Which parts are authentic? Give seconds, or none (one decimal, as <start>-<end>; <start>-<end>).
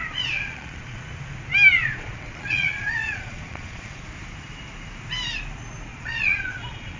1.0-1.8; 4.0-5.9